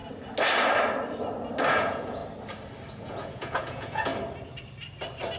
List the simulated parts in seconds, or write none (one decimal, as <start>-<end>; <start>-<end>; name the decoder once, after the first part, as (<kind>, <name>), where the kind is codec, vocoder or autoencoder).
1.7-2.2 (vocoder, Vocos); 2.9-4.1